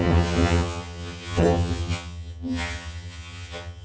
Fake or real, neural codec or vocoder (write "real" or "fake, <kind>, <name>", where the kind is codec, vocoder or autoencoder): fake, vocoder, HiFi-GAN